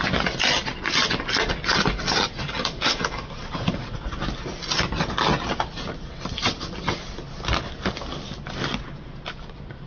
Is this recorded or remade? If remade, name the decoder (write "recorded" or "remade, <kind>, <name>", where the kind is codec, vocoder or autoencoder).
recorded